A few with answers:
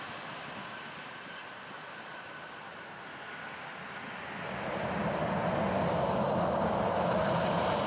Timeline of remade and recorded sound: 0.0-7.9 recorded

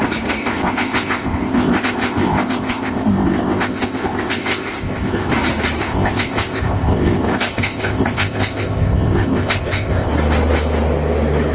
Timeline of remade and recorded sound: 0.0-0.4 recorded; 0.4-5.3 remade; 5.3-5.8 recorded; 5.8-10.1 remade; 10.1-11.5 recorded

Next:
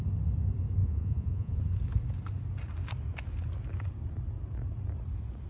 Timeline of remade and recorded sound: 0.0-0.8 recorded; 0.8-1.6 remade; 1.6-5.5 recorded